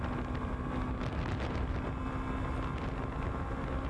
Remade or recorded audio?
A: recorded